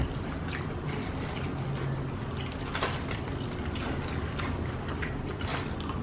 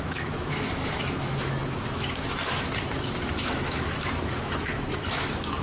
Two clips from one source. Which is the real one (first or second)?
first